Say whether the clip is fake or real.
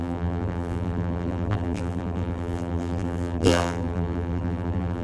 fake